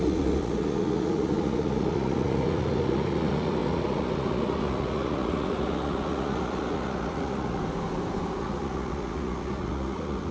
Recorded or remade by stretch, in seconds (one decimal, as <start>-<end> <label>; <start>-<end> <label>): 0.0-7.6 remade; 7.6-8.4 recorded; 8.4-10.3 remade